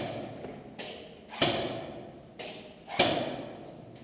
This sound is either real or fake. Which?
real